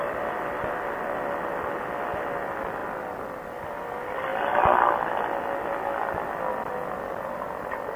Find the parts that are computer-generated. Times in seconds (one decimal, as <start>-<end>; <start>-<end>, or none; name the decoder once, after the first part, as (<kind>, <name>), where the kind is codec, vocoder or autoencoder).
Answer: none